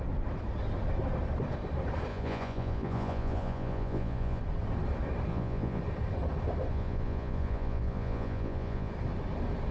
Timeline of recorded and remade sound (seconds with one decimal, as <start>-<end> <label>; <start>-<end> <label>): 0.0-2.1 recorded; 2.1-4.4 remade; 4.4-5.3 recorded; 5.3-5.8 remade; 5.8-6.7 recorded; 6.7-8.9 remade; 8.9-9.7 recorded